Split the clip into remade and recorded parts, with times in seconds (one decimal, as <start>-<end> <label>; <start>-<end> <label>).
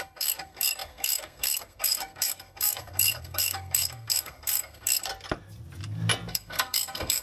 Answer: 0.0-5.1 remade; 5.1-6.3 recorded; 6.3-7.2 remade